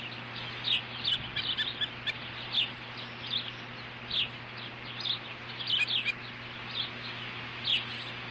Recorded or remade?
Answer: recorded